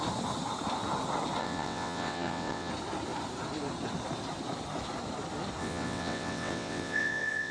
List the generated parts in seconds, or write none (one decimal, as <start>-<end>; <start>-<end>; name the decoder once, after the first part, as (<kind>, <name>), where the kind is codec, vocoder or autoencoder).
1.4-2.7 (vocoder, WaveNeXt); 5.6-7.5